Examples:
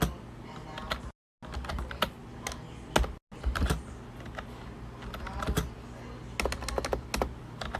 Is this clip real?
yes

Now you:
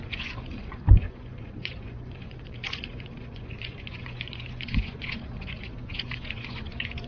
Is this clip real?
no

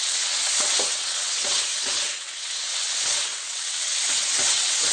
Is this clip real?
no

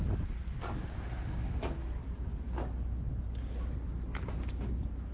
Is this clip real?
yes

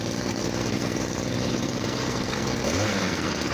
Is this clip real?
no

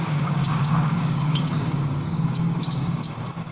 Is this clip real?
no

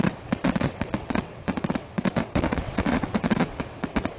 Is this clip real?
no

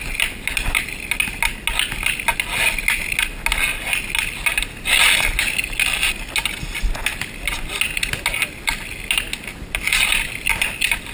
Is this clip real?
yes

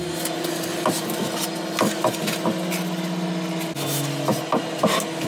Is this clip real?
yes